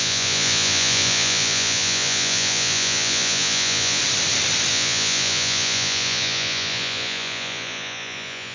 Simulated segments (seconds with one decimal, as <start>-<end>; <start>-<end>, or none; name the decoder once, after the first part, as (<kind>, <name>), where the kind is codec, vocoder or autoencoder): 0.0-4.0 (vocoder, Vocos); 4.7-8.5